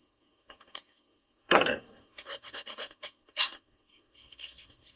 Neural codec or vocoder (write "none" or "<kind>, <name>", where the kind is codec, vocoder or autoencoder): codec, SNAC